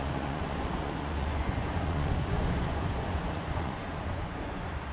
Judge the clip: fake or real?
fake